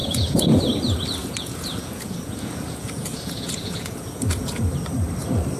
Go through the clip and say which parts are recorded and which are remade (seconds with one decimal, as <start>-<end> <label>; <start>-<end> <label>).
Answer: 0.0-0.6 remade; 0.6-1.2 recorded; 1.2-4.6 remade; 4.6-5.6 recorded